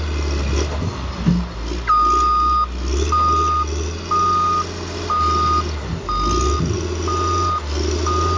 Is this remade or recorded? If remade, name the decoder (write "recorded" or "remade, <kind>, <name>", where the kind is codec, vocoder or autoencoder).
recorded